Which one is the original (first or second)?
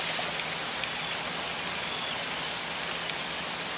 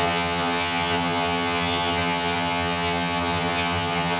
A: first